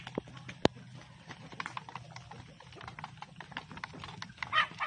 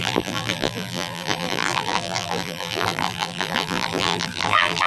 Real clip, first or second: first